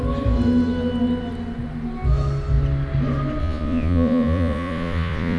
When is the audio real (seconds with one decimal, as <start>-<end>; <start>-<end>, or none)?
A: 0.0-3.4